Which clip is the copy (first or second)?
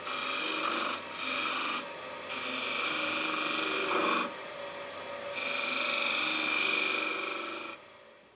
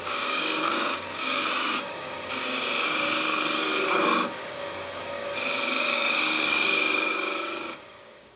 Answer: second